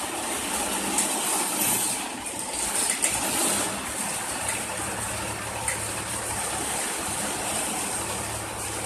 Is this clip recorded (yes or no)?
yes